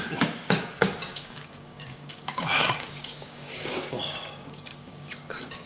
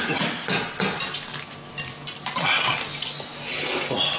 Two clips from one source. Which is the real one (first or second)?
second